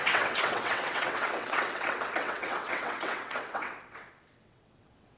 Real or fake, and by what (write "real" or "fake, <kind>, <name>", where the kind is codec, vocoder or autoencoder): fake, vocoder, WaveNeXt